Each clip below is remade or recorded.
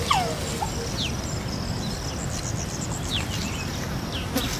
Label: recorded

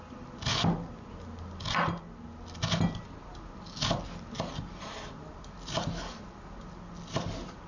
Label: recorded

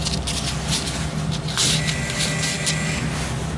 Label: recorded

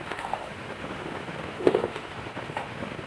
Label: remade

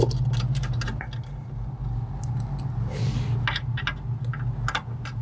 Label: recorded